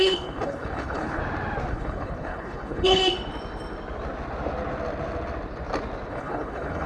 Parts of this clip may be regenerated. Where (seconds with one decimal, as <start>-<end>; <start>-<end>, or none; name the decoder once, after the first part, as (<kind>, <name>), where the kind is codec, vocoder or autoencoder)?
0.0-1.2 (codec, HILCodec); 1.7-3.0; 6.1-6.9